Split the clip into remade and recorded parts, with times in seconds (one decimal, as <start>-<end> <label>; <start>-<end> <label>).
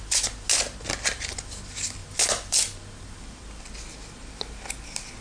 0.0-5.2 recorded